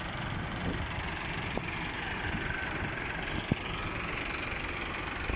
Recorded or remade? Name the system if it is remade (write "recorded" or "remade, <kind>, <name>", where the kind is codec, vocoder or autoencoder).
remade, vocoder, BigVGAN v2